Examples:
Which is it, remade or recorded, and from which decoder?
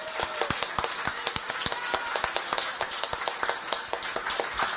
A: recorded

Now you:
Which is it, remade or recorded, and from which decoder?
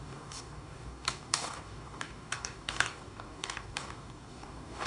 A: remade, codec, DAC